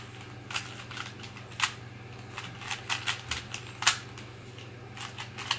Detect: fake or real real